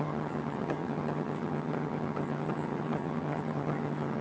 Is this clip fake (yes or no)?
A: yes